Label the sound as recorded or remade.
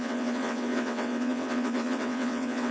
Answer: remade